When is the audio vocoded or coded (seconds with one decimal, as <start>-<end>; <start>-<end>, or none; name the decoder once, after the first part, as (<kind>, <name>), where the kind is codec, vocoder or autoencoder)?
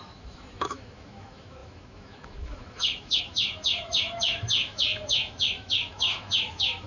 0.0-6.9 (autoencoder, DAC-VAE)